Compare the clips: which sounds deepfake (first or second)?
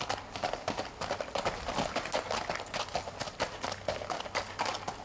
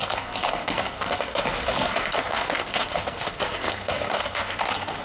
second